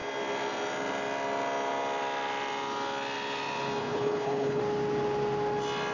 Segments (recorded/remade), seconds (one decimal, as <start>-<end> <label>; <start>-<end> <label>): 0.0-3.8 recorded; 3.8-4.6 remade; 4.6-5.9 recorded